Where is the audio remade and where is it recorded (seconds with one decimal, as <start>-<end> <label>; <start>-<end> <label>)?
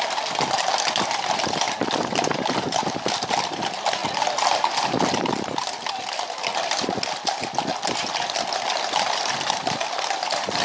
0.0-10.6 recorded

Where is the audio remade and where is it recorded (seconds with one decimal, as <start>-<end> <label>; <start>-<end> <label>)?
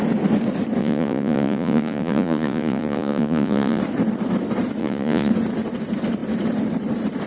0.0-0.8 recorded; 0.8-3.8 remade; 3.8-4.8 recorded; 4.8-5.3 remade; 5.3-7.3 recorded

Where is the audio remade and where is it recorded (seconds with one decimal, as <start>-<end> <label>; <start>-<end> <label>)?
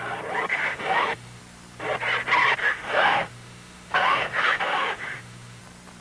0.0-0.5 recorded; 0.5-1.4 remade; 1.4-2.6 recorded; 2.6-5.6 remade; 5.6-6.0 recorded